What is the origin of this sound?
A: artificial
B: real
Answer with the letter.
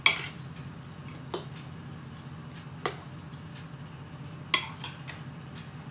B